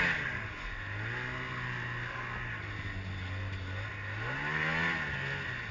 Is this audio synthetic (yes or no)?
no